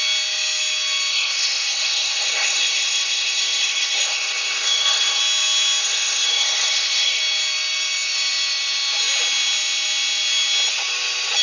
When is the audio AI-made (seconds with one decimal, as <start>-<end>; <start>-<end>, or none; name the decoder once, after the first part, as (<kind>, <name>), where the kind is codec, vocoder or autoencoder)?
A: 1.1-5.2 (codec, SNAC); 5.8-7.2